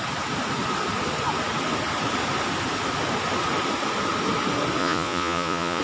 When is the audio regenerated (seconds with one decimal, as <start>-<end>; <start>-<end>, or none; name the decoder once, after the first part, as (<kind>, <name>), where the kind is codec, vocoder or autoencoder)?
4.8-5.8 (vocoder, Vocos)